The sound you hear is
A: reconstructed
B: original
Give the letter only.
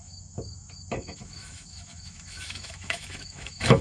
A